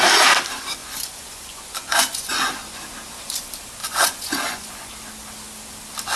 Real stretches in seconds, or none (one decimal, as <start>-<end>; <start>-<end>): 0.0-0.8; 2.8-3.8; 4.9-6.2